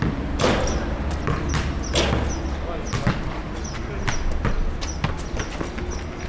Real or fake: real